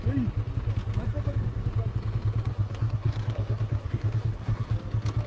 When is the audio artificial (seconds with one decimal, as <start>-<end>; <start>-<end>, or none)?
2.5-4.7